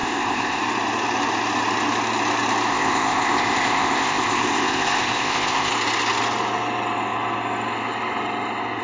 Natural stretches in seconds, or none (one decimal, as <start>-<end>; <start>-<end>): 0.6-2.7; 5.7-8.8

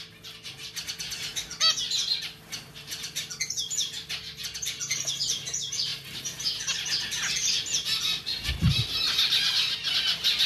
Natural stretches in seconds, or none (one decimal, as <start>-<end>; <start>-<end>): 0.0-10.5